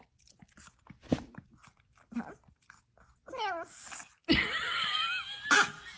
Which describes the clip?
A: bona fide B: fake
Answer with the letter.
A